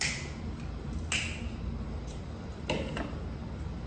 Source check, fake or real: real